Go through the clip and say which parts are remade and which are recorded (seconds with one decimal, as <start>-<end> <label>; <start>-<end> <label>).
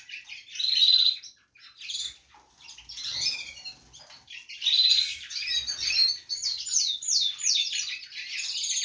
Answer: 0.0-8.8 recorded